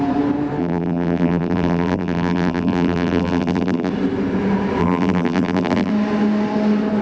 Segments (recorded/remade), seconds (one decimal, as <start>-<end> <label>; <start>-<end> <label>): 0.0-0.6 recorded; 0.6-3.9 remade; 3.9-4.8 recorded; 4.8-5.9 remade; 5.9-7.0 recorded

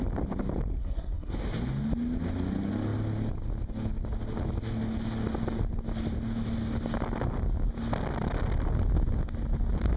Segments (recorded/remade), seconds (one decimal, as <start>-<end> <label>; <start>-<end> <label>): 0.0-0.8 recorded; 0.8-1.3 remade; 1.3-10.0 recorded

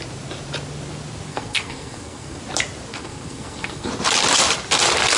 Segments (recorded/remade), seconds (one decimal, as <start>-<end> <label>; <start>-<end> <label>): 0.0-1.3 recorded; 1.3-2.4 remade; 2.4-2.9 recorded; 2.9-3.9 remade; 3.9-5.2 recorded

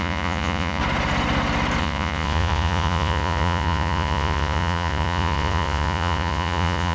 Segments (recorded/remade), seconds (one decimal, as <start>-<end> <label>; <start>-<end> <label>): 0.0-0.8 remade; 0.8-1.8 recorded; 1.8-6.9 remade

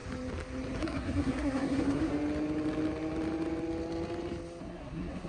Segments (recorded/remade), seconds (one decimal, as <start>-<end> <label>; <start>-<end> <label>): 0.0-0.8 recorded; 0.8-2.1 remade; 2.1-4.6 recorded; 4.6-5.3 remade

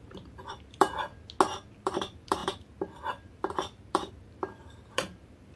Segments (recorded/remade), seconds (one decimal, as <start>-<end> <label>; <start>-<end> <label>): 0.0-1.1 remade; 1.1-1.7 recorded; 1.7-5.6 remade

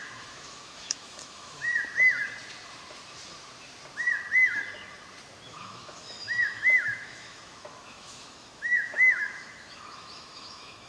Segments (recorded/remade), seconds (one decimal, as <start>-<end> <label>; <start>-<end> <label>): 0.0-1.7 remade; 1.7-5.5 recorded; 5.5-10.9 remade

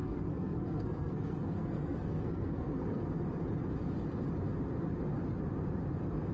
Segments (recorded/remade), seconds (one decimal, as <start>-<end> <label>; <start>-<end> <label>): 0.0-3.0 remade; 3.0-6.3 recorded